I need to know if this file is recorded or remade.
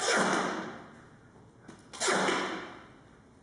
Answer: recorded